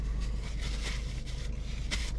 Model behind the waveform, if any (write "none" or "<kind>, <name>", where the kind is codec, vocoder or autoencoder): none